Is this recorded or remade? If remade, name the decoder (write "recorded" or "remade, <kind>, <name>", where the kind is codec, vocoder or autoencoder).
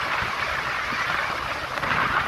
recorded